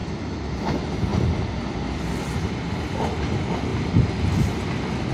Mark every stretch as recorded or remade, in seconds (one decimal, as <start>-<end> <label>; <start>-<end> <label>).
0.0-5.1 recorded